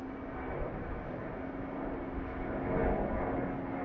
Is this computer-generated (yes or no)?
no